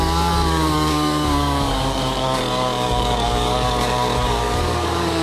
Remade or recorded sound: remade